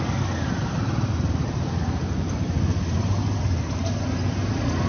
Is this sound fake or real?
real